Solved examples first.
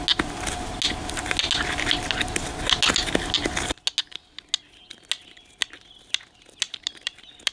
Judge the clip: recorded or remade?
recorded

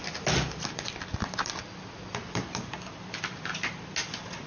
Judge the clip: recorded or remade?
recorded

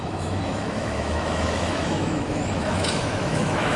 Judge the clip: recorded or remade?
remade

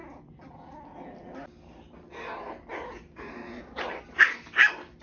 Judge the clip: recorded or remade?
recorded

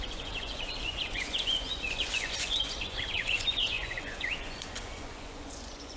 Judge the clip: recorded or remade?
remade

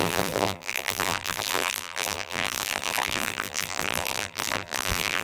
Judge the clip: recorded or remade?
remade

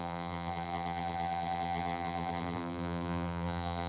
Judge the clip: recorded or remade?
remade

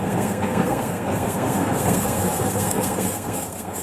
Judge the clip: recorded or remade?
remade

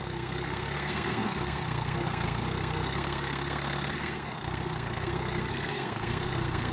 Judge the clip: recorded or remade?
remade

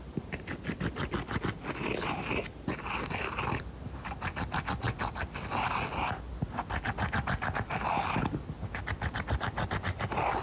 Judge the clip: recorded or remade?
recorded